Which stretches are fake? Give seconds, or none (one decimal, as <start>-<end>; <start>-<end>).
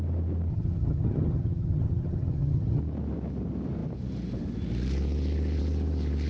0.5-2.8